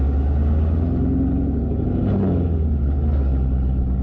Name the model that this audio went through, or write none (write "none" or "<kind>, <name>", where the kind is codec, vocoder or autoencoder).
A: none